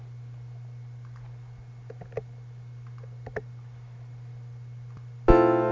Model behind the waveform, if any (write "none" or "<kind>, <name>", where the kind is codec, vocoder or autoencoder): none